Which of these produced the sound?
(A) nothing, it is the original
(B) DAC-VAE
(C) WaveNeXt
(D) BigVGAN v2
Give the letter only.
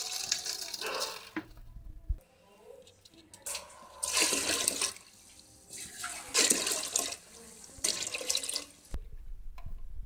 A